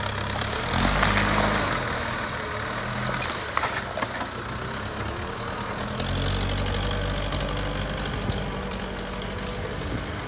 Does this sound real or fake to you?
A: real